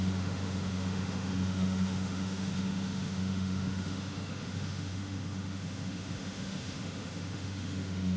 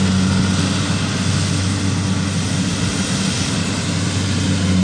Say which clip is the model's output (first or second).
first